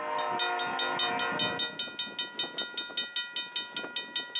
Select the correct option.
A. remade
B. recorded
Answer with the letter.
B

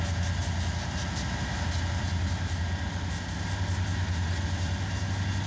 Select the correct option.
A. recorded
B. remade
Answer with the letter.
A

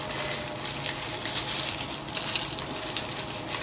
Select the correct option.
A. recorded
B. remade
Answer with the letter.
A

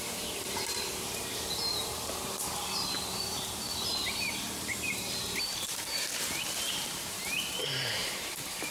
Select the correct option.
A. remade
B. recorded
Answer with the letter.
A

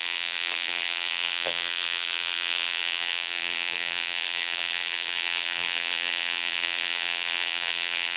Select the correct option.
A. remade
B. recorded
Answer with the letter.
A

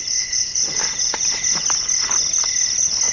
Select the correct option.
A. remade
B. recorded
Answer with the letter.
B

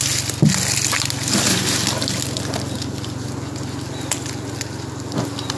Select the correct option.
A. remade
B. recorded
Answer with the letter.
B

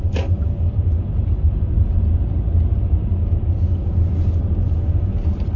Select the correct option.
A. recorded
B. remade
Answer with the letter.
A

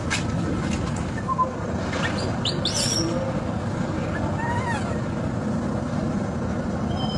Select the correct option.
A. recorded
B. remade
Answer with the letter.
A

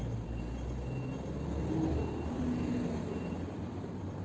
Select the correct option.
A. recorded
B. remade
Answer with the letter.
A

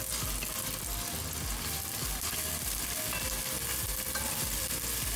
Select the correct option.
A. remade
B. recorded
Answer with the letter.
B